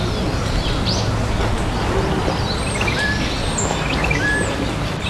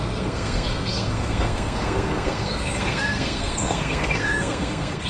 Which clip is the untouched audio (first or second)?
first